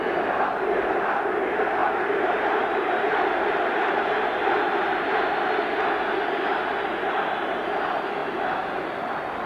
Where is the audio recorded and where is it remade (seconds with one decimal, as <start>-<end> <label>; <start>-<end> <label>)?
0.0-1.8 recorded; 1.8-4.3 remade; 4.3-9.5 recorded